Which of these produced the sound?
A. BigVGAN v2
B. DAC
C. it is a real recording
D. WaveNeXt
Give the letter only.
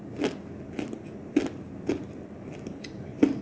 C